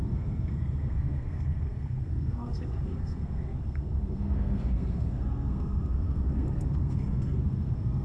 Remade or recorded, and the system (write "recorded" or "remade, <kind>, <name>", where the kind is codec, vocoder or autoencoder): remade, codec, SNAC